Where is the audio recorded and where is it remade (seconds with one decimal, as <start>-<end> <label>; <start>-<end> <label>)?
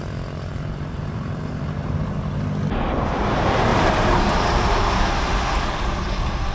0.0-0.5 recorded; 0.5-2.0 remade; 2.0-3.7 recorded; 3.7-5.0 remade; 5.0-6.5 recorded